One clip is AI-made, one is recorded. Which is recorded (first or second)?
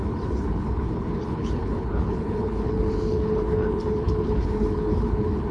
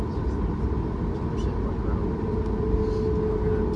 second